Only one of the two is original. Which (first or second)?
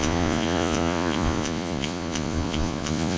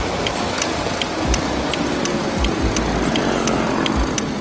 second